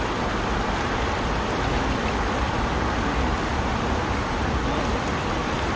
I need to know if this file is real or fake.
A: real